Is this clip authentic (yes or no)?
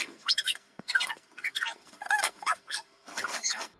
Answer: no